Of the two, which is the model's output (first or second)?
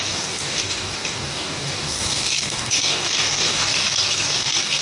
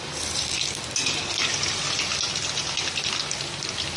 first